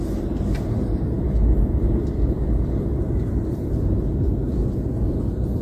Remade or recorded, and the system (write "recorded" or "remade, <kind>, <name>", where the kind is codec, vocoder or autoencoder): recorded